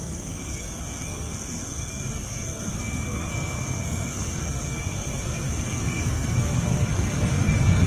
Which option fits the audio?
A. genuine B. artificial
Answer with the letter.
B